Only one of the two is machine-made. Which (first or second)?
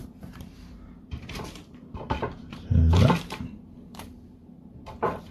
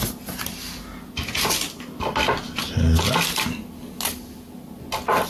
first